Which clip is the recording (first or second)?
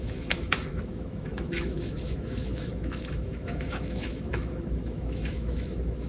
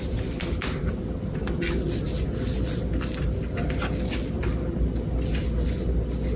second